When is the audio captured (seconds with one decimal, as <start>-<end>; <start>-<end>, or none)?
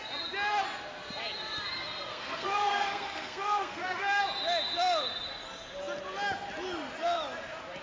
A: 0.0-2.1; 4.2-7.8